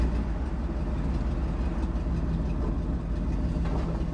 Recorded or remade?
recorded